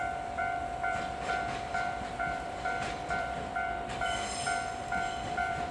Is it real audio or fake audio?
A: fake